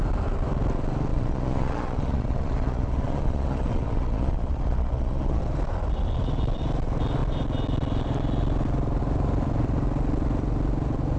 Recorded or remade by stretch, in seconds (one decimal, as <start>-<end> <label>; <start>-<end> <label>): 0.0-1.1 recorded; 1.1-5.4 remade; 5.4-11.2 recorded